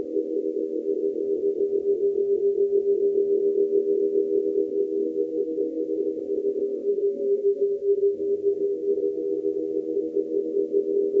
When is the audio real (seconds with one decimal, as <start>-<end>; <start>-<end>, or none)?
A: 0.0-4.7; 6.2-6.9; 9.3-11.2